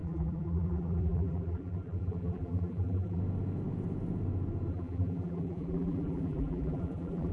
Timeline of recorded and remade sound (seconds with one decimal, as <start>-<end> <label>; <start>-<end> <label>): 0.0-3.2 remade; 3.2-4.7 recorded; 4.7-7.3 remade